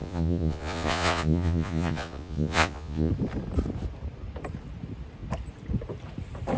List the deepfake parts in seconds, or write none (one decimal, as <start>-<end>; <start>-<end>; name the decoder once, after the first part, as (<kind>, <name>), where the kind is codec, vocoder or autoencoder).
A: 0.0-3.1 (vocoder, Vocos)